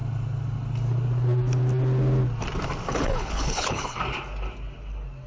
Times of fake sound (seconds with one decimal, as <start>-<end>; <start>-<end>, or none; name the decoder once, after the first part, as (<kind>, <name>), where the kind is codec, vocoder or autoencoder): 2.9-4.0 (codec, HILCodec)